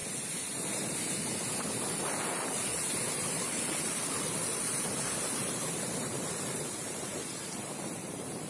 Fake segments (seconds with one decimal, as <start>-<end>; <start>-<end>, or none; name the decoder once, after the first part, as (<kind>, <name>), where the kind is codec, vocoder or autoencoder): 1.9-8.5 (vocoder, BigVGAN v2)